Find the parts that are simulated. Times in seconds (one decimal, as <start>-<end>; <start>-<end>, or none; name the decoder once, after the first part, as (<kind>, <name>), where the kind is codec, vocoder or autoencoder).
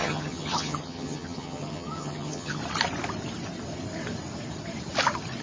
0.0-2.6 (vocoder, HiFi-GAN)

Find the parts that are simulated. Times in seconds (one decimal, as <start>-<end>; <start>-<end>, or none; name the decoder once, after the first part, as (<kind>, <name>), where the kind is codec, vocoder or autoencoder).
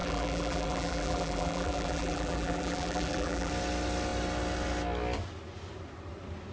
0.0-3.5 (vocoder, BigVGAN v2)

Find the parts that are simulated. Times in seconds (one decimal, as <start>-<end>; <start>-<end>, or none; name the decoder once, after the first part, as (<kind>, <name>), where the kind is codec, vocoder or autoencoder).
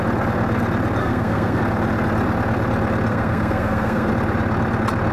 1.0-1.6 (codec, SNAC); 3.1-4.1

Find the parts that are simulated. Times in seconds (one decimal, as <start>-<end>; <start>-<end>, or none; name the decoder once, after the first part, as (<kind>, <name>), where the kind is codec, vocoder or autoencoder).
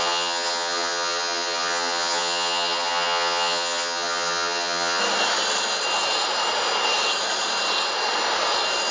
0.0-5.0 (vocoder, HiFi-GAN)